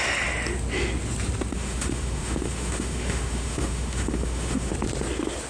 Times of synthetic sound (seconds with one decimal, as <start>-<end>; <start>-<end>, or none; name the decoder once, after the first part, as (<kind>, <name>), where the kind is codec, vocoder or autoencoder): 1.5-4.7 (autoencoder, DAC-VAE)